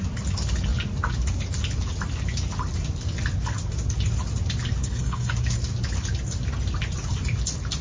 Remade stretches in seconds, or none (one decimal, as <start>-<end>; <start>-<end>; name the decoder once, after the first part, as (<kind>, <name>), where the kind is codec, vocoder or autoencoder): 4.8-5.3 (codec, SNAC)